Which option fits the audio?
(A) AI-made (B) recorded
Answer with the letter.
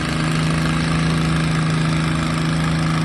B